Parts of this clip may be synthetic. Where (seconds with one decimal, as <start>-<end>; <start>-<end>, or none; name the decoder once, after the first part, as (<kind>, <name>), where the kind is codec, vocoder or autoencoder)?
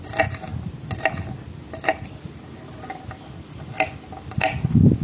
none